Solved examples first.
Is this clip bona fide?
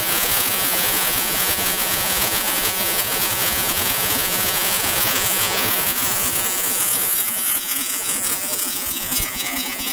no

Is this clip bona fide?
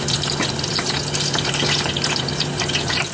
yes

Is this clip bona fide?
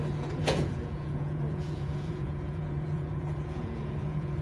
no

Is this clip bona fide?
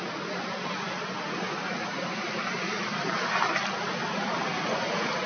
yes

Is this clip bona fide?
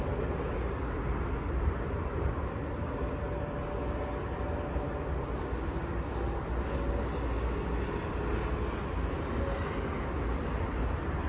yes